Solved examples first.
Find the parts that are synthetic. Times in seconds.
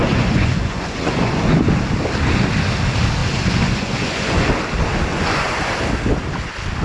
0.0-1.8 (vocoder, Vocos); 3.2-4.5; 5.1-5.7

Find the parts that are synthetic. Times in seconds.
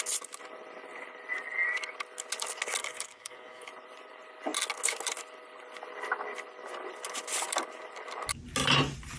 2.8-3.7 (codec, DAC)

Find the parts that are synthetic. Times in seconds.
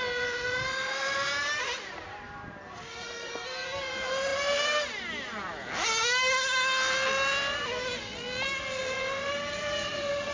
none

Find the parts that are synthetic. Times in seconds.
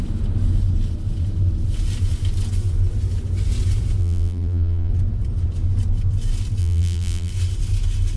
4.0-4.9 (vocoder, BigVGAN v2); 6.6-7.3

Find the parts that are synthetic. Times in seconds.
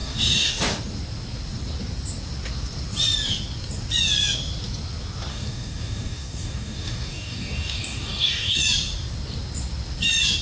0.0-0.6 (codec, DAC); 5.3-8.6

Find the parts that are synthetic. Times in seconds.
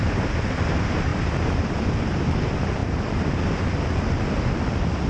0.0-5.1 (vocoder, BigVGAN v2)